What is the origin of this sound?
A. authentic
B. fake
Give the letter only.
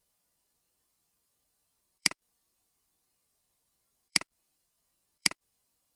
B